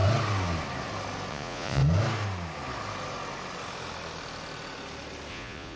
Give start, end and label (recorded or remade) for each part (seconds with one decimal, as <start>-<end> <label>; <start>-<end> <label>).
0.0-1.3 recorded; 1.3-1.8 remade; 1.8-5.3 recorded; 5.3-5.8 remade